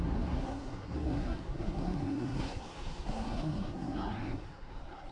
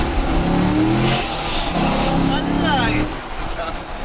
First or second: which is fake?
first